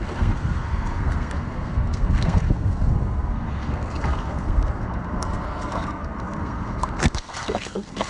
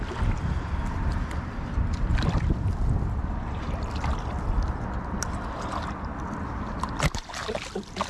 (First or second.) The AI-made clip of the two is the first